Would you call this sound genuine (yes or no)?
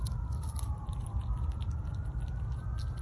yes